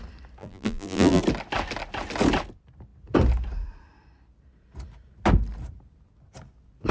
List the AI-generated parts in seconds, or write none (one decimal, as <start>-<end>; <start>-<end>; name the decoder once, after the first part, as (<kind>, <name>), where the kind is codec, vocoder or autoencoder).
0.4-1.2 (vocoder, BigVGAN v2)